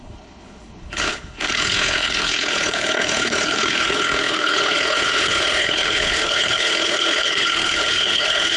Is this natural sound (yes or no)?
no